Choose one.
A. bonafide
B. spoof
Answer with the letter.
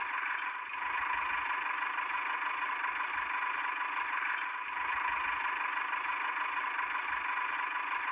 A